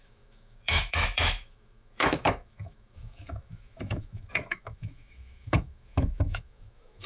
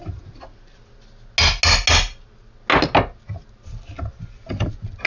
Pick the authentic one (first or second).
second